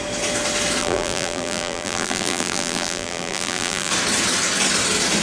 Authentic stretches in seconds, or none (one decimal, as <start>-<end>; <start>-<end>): 0.0-0.8; 3.9-5.2